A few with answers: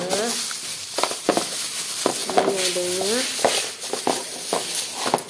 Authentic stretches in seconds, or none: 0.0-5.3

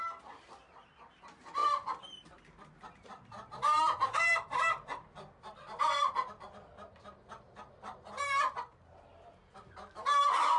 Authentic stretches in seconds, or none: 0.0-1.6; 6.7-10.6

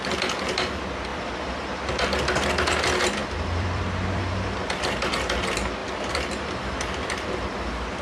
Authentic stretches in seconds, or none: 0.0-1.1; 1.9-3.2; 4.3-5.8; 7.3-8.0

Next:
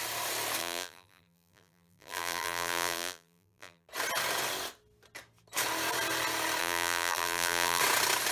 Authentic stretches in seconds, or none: 0.0-0.6; 3.9-6.6; 7.8-8.3

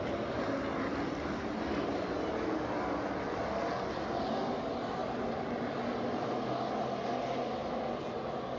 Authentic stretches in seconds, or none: 0.0-5.0; 5.7-7.6; 8.2-8.6

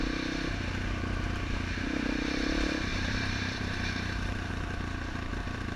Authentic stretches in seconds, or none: 0.0-2.9; 4.5-5.8

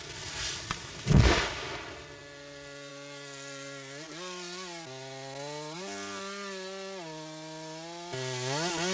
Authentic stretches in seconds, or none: 0.0-8.9